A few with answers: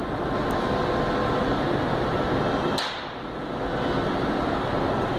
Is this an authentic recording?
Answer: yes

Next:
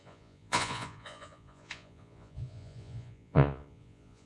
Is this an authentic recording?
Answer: no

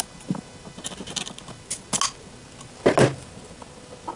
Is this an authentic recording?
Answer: yes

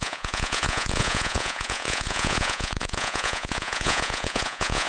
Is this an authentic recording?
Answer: no